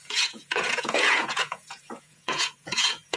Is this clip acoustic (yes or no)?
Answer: no